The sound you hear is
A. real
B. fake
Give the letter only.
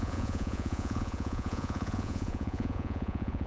B